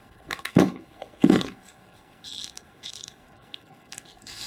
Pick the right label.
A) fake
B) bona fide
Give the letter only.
A